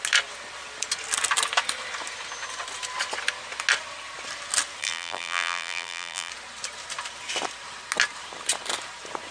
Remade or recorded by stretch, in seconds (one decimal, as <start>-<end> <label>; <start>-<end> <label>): 0.0-4.8 recorded; 4.8-6.3 remade; 6.3-9.3 recorded